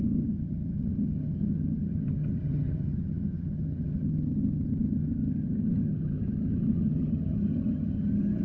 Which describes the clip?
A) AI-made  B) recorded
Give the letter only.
A